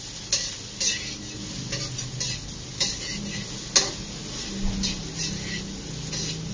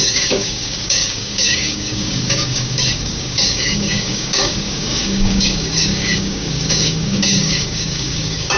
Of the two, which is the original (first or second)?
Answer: first